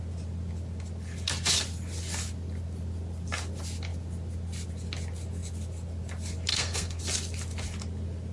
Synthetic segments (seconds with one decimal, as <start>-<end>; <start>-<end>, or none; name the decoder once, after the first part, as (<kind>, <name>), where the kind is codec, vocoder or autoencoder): 6.5-7.0 (codec, SNAC)